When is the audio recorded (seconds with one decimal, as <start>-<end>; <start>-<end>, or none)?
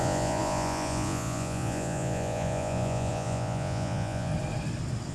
4.3-5.1